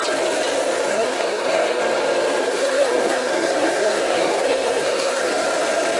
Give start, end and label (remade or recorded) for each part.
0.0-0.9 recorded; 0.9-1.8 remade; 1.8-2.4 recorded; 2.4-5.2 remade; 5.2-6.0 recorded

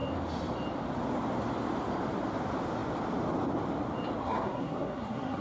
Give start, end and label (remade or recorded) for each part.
0.0-4.2 recorded; 4.2-5.4 remade

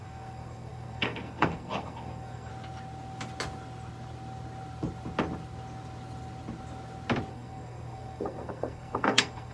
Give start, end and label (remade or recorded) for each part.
0.0-2.5 remade; 2.5-7.3 recorded; 7.3-9.5 remade

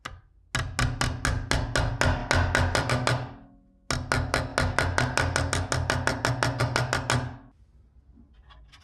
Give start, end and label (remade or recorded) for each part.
0.0-8.8 recorded

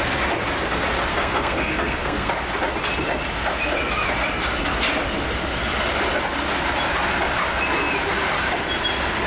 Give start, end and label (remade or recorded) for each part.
0.0-1.1 recorded; 1.1-2.3 remade; 2.3-9.3 recorded

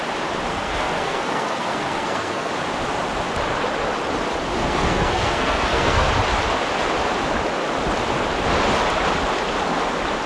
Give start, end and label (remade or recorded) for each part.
0.0-0.5 recorded; 0.5-2.5 remade; 2.5-4.5 recorded; 4.5-6.1 remade; 6.1-10.3 recorded